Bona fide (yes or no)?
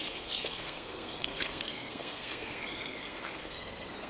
no